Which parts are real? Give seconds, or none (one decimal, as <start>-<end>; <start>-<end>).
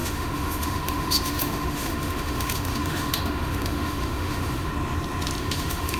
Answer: 4.7-5.4